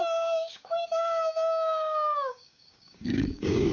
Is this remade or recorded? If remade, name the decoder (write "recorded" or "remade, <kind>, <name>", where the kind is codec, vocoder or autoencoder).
remade, codec, DAC